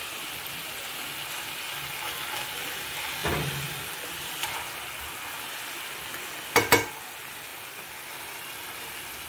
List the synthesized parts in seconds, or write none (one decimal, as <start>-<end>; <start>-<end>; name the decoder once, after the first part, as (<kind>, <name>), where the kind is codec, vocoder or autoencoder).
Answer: none